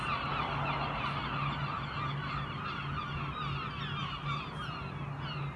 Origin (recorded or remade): recorded